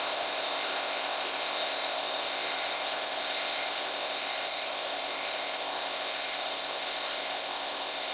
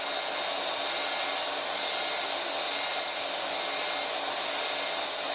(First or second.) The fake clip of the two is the first